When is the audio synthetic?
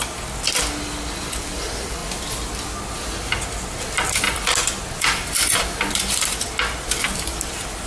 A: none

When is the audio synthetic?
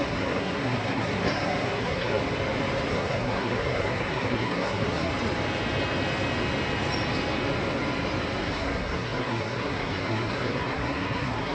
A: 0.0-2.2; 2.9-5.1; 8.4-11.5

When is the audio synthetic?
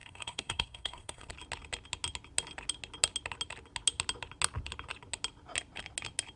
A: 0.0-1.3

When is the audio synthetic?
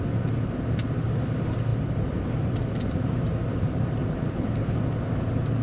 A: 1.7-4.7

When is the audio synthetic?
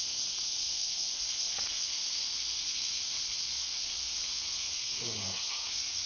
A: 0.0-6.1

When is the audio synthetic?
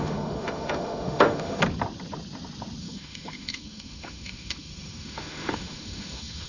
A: 0.0-1.6; 2.8-6.5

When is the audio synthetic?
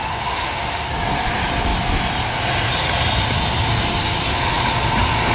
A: 0.0-0.9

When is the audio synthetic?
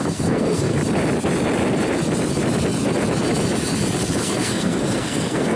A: 0.0-0.8; 4.2-5.6